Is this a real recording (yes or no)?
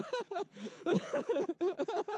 no